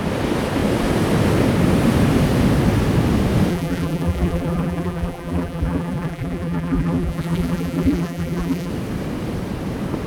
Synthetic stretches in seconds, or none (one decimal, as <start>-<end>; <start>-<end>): 3.5-8.7